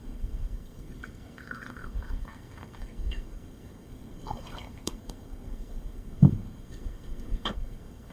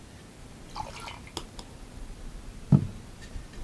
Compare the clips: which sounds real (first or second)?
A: second